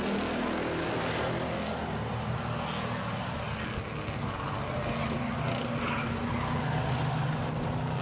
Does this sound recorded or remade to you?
recorded